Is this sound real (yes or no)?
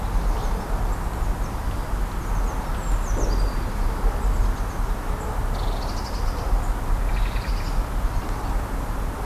yes